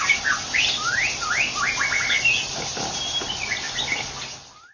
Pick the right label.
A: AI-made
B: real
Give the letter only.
B